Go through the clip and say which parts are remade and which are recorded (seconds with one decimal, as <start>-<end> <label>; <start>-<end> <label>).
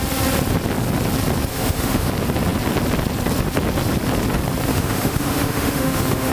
0.0-1.5 recorded; 1.5-2.1 remade; 2.1-4.7 recorded; 4.7-6.3 remade